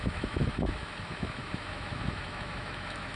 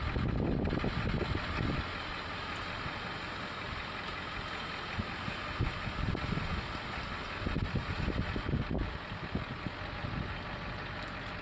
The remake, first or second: first